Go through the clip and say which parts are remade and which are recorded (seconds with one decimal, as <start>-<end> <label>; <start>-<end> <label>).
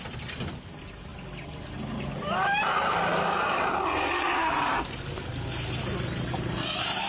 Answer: 0.0-7.1 recorded